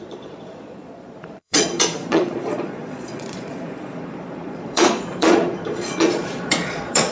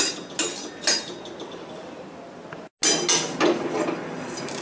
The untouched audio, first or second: second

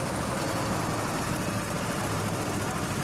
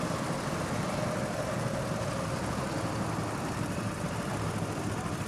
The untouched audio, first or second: first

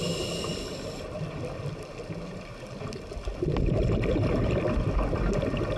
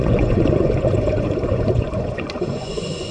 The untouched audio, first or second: first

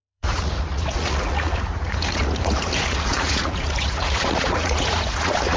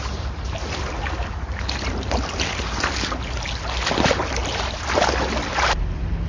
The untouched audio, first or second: second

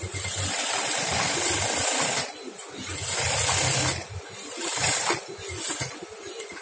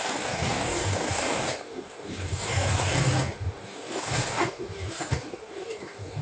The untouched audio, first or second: first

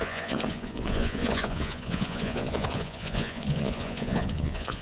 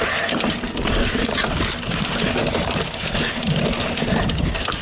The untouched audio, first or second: second